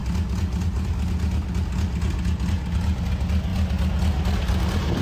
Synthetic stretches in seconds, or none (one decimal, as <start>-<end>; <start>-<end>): none